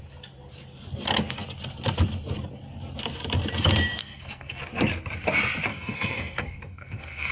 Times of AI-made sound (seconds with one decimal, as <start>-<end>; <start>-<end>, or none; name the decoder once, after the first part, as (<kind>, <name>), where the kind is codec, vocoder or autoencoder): 4.0-4.6 (codec, SNAC); 5.7-7.3